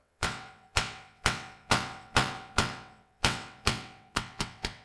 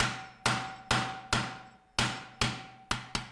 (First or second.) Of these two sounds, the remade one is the first